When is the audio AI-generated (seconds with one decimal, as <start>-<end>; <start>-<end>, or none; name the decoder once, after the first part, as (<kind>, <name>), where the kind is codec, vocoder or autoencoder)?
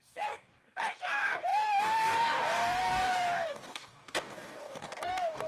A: 0.0-5.5 (codec, DAC)